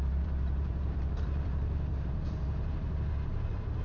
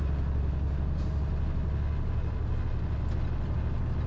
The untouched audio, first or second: second